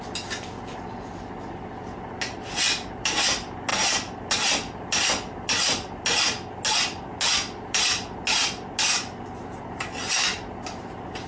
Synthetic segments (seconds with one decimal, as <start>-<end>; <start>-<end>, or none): none